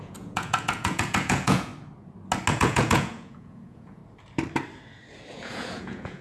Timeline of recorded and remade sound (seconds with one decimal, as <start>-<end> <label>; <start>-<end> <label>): 0.0-1.7 remade; 1.7-2.5 recorded; 2.5-4.0 remade; 4.0-5.3 recorded; 5.3-6.2 remade

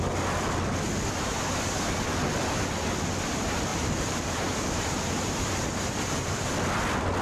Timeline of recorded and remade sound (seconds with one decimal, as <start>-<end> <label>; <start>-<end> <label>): 0.0-3.7 recorded; 3.7-6.5 remade; 6.5-7.2 recorded

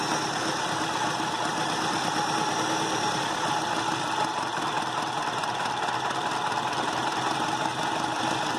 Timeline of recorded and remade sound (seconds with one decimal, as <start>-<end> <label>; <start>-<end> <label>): 0.0-8.6 recorded

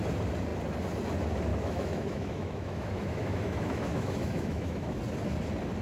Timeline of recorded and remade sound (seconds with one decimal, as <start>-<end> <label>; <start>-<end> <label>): 0.0-1.5 recorded; 1.5-5.0 remade; 5.0-5.8 recorded